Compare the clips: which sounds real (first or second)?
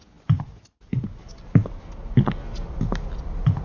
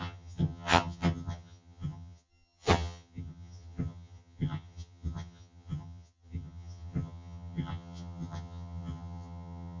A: first